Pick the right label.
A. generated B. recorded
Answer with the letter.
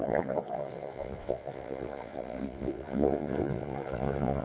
A